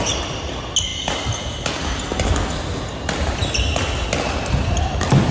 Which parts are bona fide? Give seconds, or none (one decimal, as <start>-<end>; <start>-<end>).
0.0-5.3